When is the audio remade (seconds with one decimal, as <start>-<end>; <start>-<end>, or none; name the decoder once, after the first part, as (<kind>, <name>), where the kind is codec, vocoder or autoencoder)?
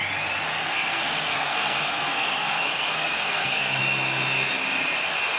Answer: 0.6-3.8 (codec, SNAC)